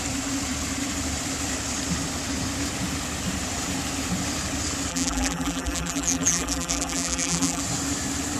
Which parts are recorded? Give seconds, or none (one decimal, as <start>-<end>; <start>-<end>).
0.0-4.9; 7.6-8.4